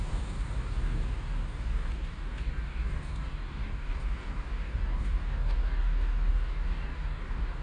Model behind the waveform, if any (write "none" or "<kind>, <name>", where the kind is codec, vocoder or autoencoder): codec, DAC